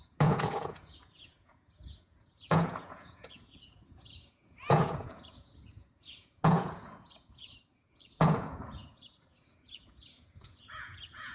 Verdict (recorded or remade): remade